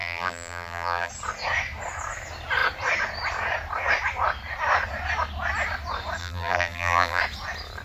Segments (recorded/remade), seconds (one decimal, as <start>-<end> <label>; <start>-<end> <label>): 0.0-1.1 remade; 1.1-6.2 recorded; 6.2-7.2 remade; 7.2-7.8 recorded